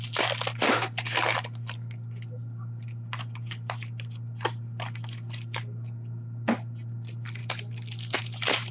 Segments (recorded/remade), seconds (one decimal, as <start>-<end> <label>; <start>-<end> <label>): 0.0-8.7 recorded